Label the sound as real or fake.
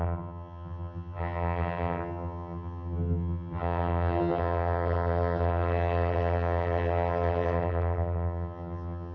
fake